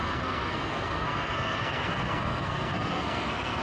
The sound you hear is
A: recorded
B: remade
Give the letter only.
B